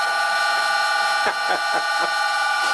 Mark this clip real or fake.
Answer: real